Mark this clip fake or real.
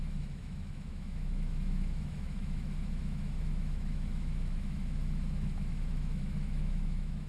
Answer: fake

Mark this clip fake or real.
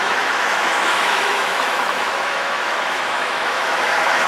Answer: fake